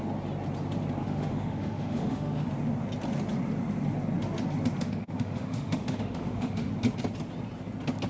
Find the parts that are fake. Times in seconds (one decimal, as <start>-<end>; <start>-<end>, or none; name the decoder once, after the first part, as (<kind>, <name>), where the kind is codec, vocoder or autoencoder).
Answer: 1.0-2.5 (autoencoder, DAC-VAE); 4.8-6.7